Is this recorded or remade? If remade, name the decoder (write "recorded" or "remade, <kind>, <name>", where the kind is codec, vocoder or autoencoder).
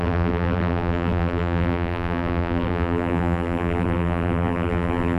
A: remade, vocoder, BigVGAN v2